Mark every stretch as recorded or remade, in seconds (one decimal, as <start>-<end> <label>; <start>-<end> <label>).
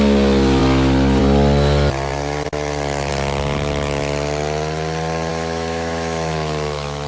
0.0-5.3 recorded; 5.3-7.1 remade